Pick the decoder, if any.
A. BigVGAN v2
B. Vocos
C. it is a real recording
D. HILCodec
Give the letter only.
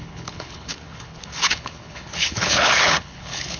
D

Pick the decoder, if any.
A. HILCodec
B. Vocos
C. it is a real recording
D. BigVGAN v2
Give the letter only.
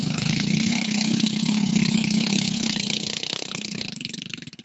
A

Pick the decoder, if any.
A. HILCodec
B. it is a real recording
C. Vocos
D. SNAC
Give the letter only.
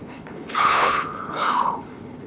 A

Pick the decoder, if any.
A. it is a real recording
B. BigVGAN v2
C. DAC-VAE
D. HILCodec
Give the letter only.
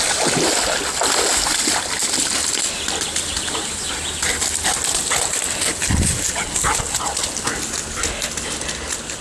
A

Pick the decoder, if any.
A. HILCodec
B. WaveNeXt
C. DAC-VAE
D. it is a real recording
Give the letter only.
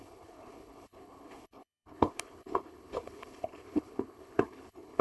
A